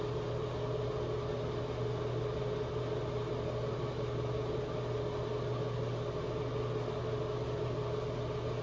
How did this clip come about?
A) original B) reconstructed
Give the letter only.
A